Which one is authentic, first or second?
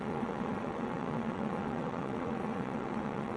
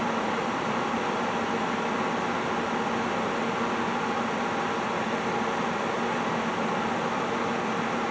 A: second